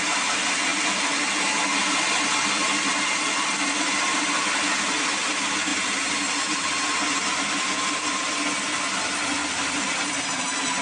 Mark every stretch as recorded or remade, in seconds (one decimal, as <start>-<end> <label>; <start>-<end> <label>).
0.0-10.8 recorded